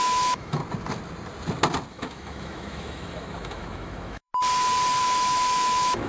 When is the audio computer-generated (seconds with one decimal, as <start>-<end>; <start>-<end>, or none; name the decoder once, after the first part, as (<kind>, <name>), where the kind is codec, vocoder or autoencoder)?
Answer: 0.0-0.6 (autoencoder, DAC-VAE); 1.9-4.3; 5.0-6.1